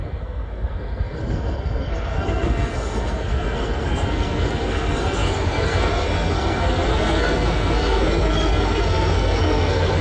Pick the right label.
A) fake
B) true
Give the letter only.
A